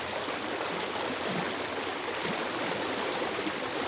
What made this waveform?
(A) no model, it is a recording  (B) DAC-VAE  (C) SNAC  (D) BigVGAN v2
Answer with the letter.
A